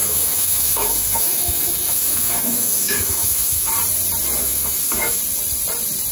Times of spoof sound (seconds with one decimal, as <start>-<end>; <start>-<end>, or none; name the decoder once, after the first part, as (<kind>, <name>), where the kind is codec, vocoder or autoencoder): 0.0-3.7 (autoencoder, DAC-VAE); 4.4-5.2